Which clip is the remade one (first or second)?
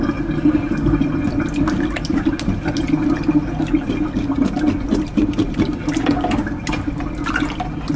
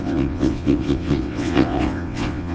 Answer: second